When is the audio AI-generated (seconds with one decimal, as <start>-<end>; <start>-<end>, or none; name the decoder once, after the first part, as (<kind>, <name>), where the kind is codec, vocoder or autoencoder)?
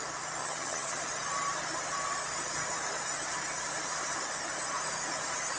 0.4-1.0 (vocoder, HiFi-GAN)